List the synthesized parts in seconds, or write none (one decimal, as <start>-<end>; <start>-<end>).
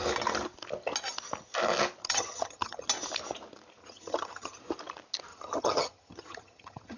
2.0-2.9; 3.8-4.6; 5.3-7.0